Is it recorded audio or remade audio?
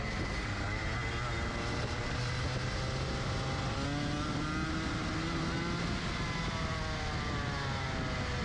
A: recorded